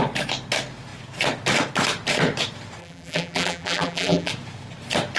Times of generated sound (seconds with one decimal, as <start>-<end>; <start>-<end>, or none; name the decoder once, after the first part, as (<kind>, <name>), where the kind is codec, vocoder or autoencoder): 2.8-4.3 (vocoder, BigVGAN v2)